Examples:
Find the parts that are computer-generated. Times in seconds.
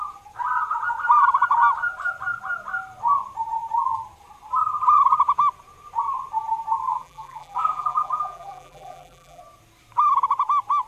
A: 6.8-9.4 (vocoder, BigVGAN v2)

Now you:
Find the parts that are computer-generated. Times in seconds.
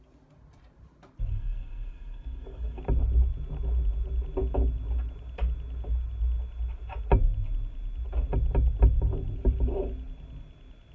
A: 1.3-2.8 (codec, SNAC)